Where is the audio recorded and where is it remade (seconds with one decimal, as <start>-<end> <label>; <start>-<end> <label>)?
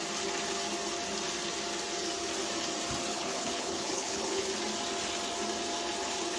0.0-3.1 recorded; 3.1-4.4 remade; 4.4-6.4 recorded